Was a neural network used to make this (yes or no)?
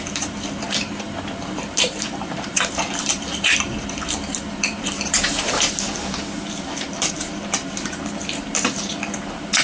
yes